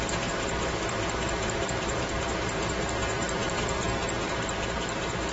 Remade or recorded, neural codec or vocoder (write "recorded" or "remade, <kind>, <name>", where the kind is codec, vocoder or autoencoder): remade, vocoder, BigVGAN v2